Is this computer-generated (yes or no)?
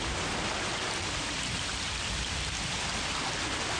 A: no